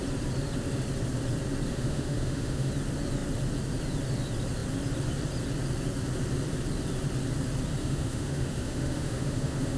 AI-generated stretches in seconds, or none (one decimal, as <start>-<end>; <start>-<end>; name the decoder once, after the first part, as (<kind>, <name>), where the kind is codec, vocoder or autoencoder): 1.7-2.7 (autoencoder, DAC-VAE); 7.8-9.8